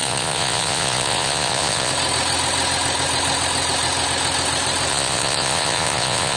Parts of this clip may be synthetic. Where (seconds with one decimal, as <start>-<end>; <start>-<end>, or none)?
0.0-1.9; 4.9-6.4